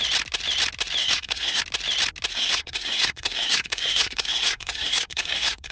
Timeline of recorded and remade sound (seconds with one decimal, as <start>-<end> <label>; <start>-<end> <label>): 0.0-1.0 recorded; 1.0-1.6 remade; 1.6-2.3 recorded; 2.3-5.7 remade